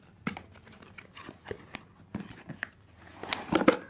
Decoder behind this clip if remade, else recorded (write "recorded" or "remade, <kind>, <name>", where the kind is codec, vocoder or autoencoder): recorded